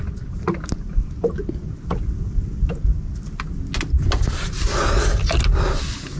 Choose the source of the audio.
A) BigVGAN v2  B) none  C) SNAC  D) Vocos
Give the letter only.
B